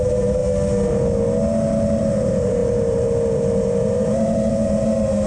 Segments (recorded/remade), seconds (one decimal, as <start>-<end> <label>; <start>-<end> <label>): 0.0-0.4 remade; 0.4-2.0 recorded; 2.0-5.3 remade